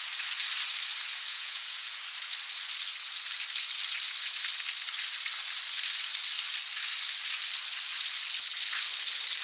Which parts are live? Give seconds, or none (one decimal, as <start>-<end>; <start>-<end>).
0.0-1.3; 2.0-9.4